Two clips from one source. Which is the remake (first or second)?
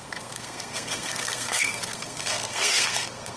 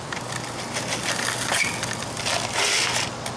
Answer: first